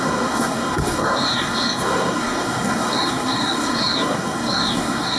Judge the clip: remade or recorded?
remade